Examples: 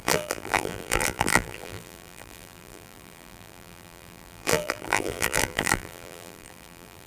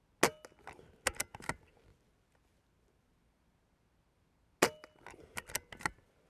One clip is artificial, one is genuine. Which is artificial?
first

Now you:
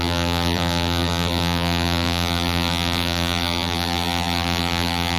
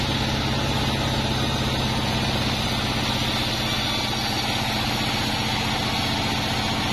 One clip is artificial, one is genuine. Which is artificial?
first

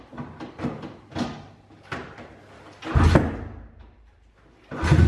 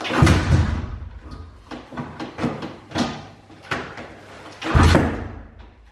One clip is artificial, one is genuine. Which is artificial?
second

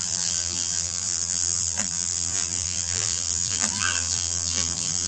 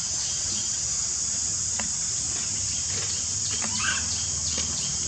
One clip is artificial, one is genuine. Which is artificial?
first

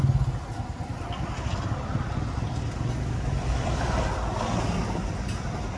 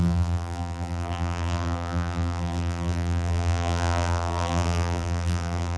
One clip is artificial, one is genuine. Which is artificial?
second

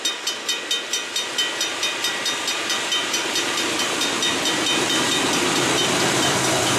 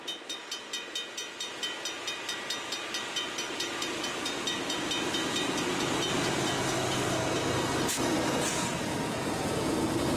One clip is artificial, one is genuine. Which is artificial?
first